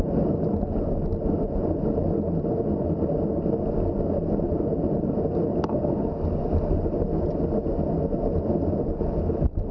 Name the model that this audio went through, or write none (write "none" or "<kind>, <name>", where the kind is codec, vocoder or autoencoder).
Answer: none